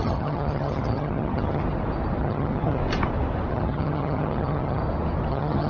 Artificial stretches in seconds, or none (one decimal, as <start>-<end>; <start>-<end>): 0.0-1.6; 2.2-2.8; 3.5-4.8; 5.3-5.7